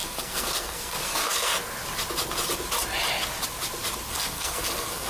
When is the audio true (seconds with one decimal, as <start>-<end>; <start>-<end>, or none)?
1.5-4.1